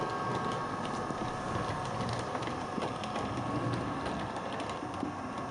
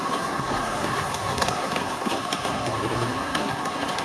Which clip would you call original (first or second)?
first